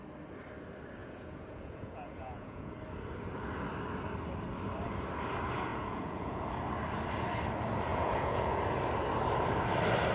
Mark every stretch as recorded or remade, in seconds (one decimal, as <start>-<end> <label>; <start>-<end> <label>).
0.0-1.0 recorded; 1.0-2.7 remade; 2.7-5.7 recorded; 5.7-6.4 remade; 6.4-7.9 recorded; 7.9-8.6 remade; 8.6-10.1 recorded